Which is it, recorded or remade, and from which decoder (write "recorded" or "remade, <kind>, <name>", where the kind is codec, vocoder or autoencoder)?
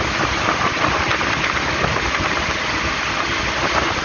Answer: recorded